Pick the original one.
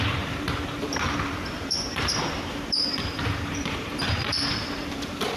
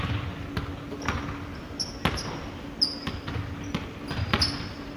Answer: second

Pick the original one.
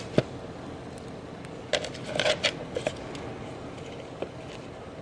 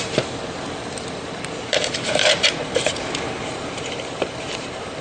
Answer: first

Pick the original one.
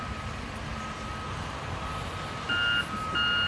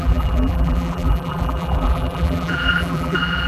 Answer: first